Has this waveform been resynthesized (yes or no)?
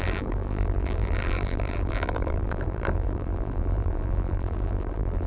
yes